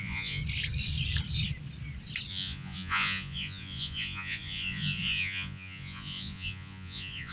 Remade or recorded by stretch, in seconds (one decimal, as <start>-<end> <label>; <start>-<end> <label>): 0.0-0.4 remade; 0.4-2.3 recorded; 2.3-7.3 remade